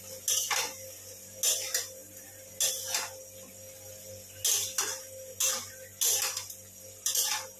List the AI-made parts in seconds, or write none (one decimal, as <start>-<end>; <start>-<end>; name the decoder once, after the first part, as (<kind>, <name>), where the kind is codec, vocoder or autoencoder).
none